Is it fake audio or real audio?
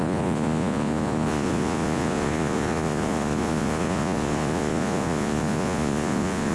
fake